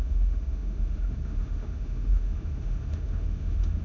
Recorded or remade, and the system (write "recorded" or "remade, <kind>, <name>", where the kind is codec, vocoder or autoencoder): remade, autoencoder, DAC-VAE